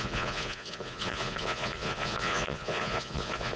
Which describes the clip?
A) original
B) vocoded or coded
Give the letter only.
B